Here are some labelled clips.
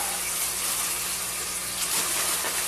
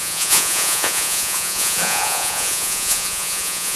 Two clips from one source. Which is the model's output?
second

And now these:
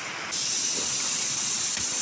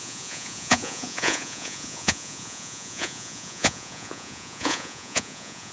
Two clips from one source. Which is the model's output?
second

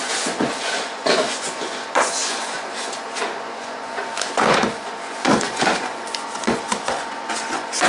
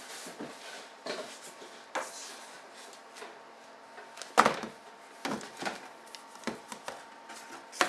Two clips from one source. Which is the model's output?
first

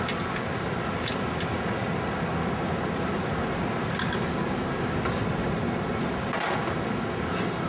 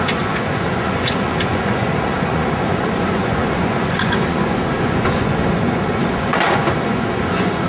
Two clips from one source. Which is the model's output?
second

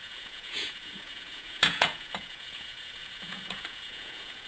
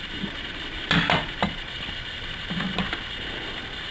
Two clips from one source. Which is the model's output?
first